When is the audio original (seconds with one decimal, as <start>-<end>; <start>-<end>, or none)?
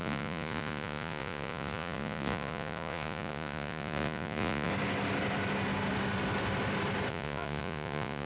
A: 4.7-7.1